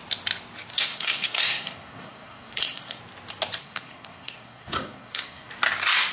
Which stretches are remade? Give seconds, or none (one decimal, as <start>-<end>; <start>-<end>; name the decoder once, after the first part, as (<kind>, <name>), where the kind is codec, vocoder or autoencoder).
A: 0.7-3.0 (codec, SNAC); 3.6-5.5